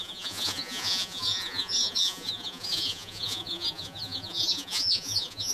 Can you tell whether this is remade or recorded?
remade